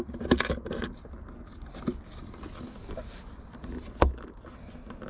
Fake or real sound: real